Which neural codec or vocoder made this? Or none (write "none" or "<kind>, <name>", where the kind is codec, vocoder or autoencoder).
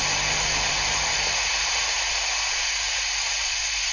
none